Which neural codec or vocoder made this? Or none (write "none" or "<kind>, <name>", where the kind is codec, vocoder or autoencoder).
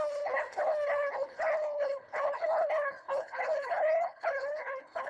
codec, HILCodec